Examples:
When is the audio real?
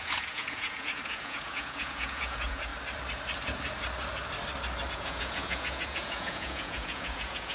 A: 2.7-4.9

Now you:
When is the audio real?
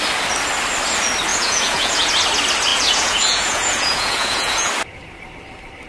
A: 0.0-1.3; 2.1-2.7; 4.7-5.9